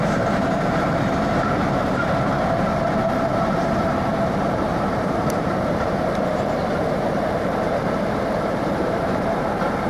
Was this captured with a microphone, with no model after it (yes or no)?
no